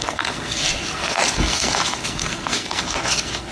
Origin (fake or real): fake